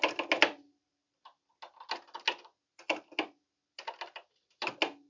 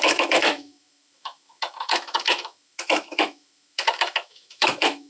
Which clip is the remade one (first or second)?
second